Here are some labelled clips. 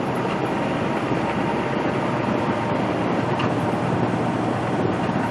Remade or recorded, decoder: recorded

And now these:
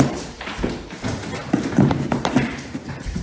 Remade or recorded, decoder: remade, vocoder, BigVGAN v2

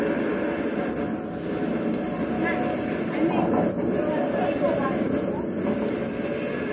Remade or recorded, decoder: recorded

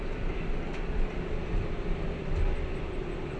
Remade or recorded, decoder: recorded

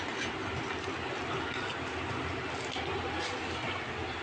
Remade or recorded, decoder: recorded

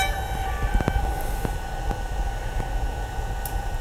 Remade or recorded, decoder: recorded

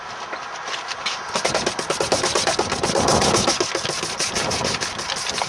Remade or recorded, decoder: recorded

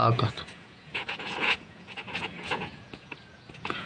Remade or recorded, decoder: remade, vocoder, Vocos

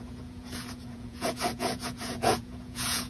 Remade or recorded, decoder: remade, vocoder, Vocos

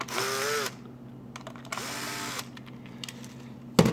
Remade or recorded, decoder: recorded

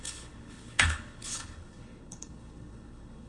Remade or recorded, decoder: remade, codec, HILCodec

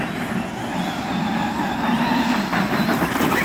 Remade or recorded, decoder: recorded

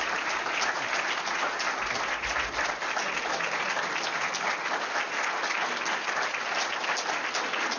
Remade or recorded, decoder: recorded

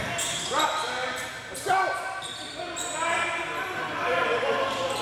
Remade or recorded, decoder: recorded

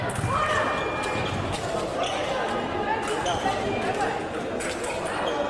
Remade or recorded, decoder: recorded